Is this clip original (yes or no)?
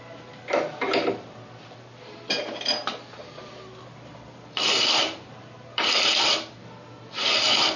no